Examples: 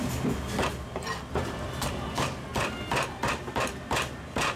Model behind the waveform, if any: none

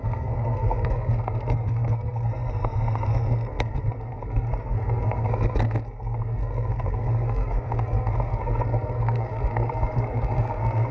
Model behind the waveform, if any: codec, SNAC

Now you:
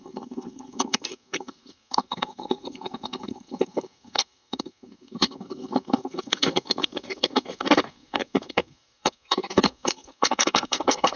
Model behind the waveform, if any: codec, SNAC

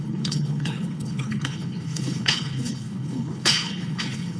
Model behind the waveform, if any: codec, HILCodec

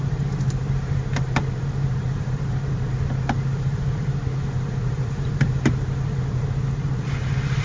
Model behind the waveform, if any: vocoder, BigVGAN v2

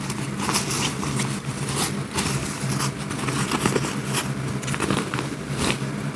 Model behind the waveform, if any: none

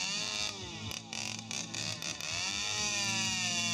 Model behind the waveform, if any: none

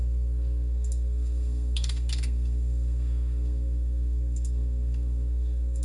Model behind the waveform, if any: codec, SNAC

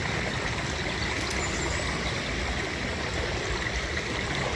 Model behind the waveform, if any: none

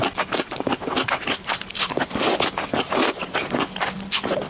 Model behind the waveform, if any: none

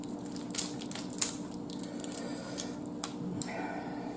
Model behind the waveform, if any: none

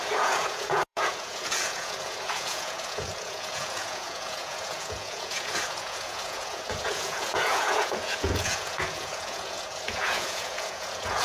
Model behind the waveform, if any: vocoder, Vocos